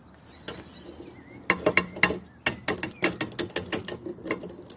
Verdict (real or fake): real